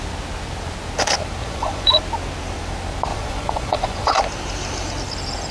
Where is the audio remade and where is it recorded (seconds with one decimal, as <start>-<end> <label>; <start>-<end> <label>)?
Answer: 0.0-1.4 recorded; 1.4-2.0 remade; 2.0-3.1 recorded; 3.1-4.2 remade; 4.2-5.5 recorded